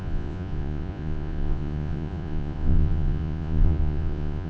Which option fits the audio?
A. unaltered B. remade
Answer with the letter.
B